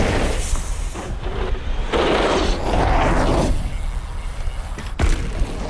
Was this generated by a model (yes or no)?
no